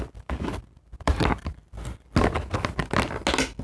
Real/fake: real